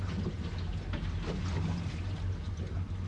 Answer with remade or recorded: recorded